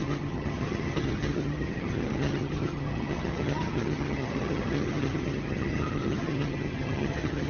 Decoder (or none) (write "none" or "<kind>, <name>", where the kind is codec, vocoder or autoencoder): vocoder, HiFi-GAN